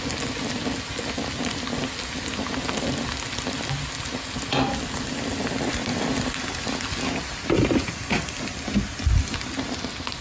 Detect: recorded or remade recorded